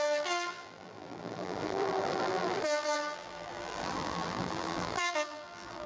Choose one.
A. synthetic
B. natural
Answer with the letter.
A